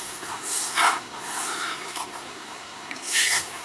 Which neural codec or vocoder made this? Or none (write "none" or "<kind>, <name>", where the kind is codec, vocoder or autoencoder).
codec, SNAC